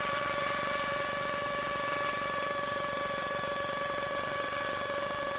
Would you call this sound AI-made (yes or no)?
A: yes